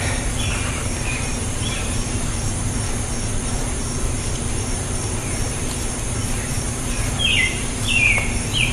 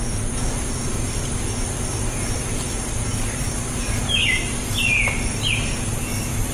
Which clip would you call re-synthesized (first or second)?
first